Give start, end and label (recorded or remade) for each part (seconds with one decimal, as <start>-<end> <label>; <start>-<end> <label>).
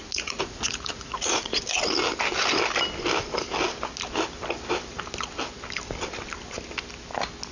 0.0-1.6 remade; 1.6-7.5 recorded